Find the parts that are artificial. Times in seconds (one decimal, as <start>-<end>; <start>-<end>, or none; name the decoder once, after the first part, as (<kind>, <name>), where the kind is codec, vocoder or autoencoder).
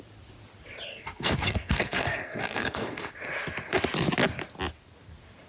0.9-3.1 (codec, SNAC)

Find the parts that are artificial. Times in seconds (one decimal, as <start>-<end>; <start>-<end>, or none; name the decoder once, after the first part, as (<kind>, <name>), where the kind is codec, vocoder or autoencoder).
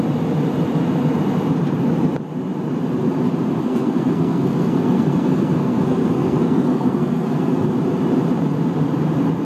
3.6-7.7 (codec, SNAC)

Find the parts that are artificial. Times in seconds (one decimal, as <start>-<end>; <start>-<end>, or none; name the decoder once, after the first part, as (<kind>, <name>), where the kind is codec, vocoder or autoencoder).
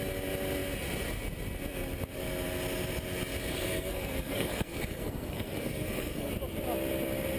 3.5-6.3 (codec, SNAC)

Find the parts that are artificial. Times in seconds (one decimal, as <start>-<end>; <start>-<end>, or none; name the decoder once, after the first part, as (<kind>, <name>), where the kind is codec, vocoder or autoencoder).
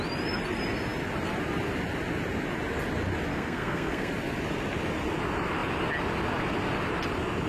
3.3-4.1 (codec, SNAC)